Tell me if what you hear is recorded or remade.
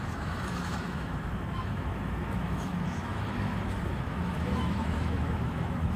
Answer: remade